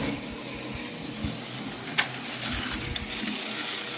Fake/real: real